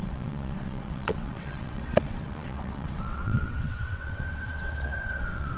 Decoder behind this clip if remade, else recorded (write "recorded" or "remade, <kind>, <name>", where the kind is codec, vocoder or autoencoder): remade, vocoder, WaveNeXt